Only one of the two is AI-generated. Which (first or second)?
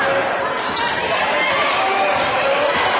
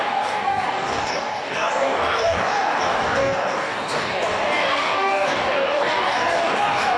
second